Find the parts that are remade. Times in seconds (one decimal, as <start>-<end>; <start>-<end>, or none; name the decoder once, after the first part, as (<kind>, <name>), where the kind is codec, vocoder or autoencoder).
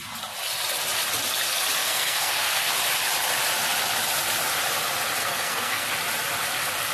1.8-2.7 (codec, SNAC); 5.2-5.9